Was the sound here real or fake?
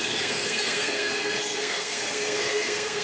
fake